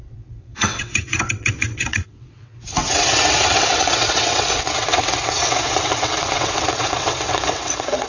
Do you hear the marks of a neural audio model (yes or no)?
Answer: yes